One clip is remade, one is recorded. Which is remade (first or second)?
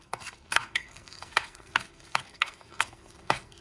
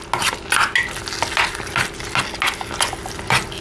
first